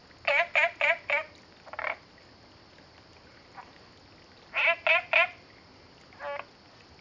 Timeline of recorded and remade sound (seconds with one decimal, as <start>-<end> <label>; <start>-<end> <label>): 0.0-7.0 recorded